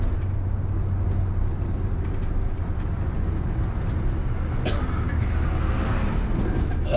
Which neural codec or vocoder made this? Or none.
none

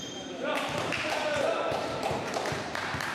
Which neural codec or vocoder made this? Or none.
vocoder, BigVGAN v2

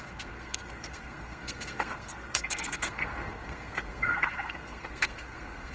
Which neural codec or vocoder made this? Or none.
codec, SNAC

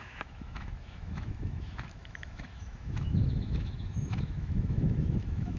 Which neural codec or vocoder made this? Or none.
autoencoder, DAC-VAE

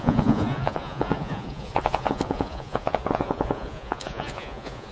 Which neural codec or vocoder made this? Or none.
vocoder, Vocos